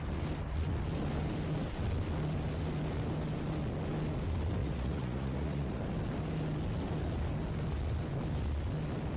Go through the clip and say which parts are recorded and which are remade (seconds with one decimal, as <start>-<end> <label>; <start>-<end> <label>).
0.0-4.6 recorded; 4.6-5.8 remade; 5.8-9.2 recorded